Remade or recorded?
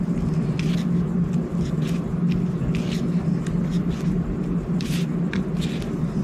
recorded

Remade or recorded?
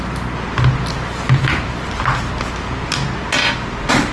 recorded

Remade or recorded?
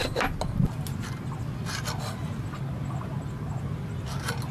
recorded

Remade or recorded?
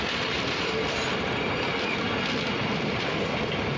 remade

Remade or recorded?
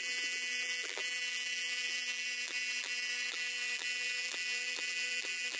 remade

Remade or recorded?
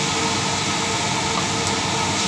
recorded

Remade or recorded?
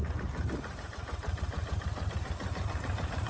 remade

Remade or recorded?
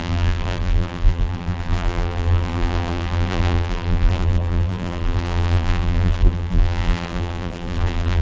remade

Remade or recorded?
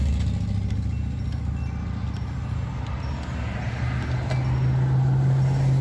recorded